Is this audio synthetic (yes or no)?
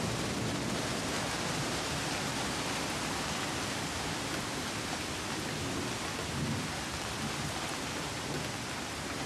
no